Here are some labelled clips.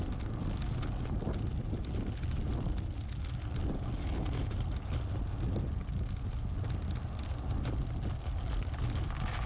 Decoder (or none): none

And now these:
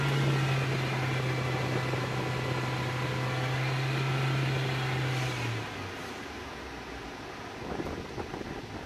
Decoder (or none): none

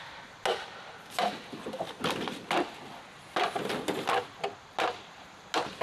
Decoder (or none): none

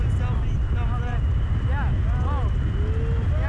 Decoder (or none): none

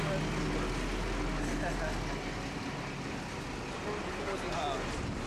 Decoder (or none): none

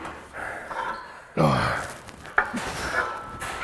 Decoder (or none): vocoder, BigVGAN v2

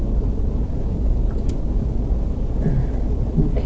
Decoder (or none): vocoder, BigVGAN v2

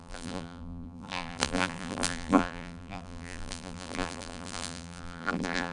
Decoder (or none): vocoder, BigVGAN v2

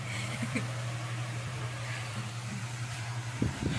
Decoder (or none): vocoder, BigVGAN v2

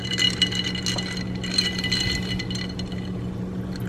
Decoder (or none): none